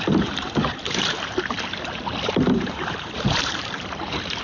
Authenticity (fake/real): fake